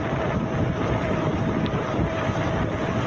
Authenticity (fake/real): real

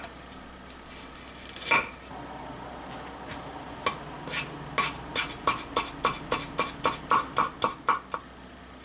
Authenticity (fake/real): real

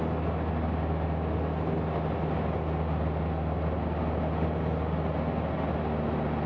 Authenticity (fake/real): real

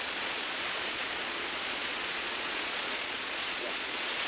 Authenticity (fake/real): fake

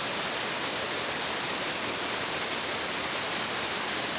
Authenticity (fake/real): real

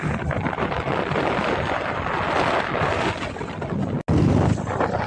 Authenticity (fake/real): real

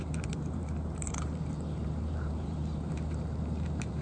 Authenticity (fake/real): fake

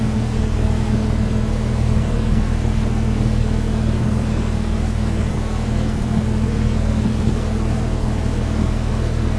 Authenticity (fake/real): fake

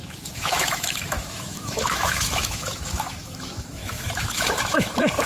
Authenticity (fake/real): fake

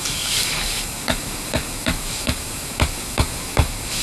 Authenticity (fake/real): fake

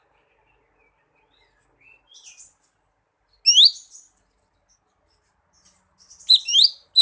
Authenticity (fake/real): real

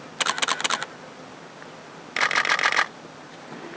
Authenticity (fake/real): real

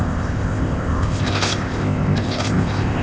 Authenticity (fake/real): fake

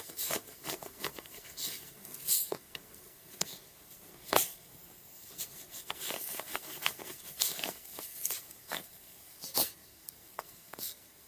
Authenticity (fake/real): fake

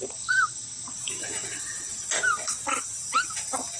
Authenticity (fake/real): real